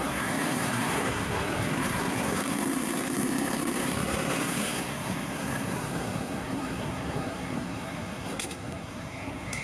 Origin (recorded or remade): remade